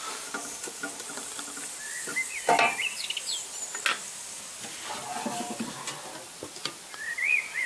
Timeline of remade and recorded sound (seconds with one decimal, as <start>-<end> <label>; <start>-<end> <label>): 0.0-2.1 recorded; 2.1-2.8 remade; 2.8-7.7 recorded